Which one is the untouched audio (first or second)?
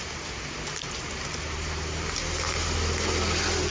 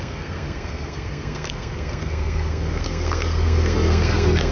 first